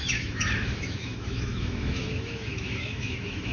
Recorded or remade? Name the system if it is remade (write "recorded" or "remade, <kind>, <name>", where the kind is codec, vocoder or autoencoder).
remade, autoencoder, DAC-VAE